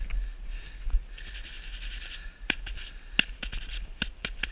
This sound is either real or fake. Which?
real